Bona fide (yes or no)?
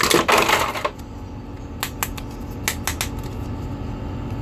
yes